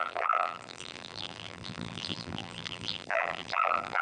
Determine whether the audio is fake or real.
fake